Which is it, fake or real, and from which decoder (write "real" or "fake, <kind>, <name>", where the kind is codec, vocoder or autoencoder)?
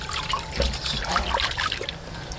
real